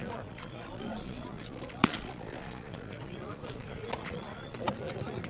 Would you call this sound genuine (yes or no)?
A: no